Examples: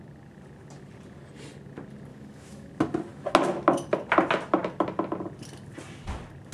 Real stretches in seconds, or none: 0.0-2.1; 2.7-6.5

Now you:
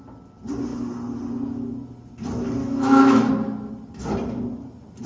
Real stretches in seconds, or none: 0.0-2.6; 3.3-5.1

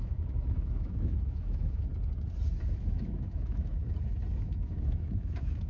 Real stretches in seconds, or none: 1.9-2.8; 3.8-4.3

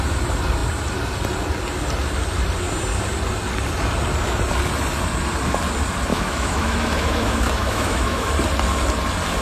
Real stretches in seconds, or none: 0.0-6.1; 8.3-9.4